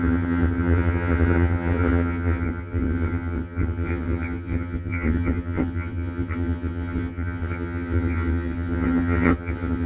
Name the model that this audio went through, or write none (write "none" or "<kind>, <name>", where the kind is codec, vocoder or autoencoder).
vocoder, HiFi-GAN